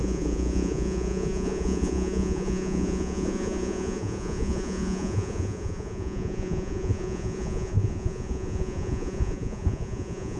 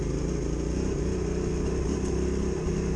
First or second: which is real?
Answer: second